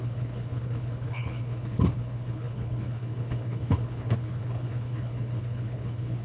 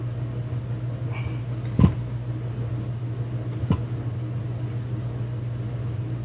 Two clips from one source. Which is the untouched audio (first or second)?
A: second